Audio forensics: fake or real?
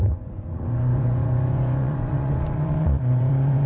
fake